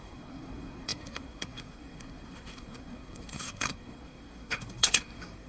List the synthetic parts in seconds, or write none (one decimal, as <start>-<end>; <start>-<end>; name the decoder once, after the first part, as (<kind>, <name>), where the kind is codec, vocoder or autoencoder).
0.0-5.5 (codec, SNAC)